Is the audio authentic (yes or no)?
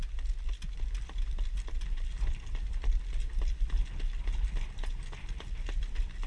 yes